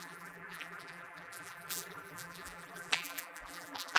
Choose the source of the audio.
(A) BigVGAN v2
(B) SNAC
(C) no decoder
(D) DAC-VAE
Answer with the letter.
A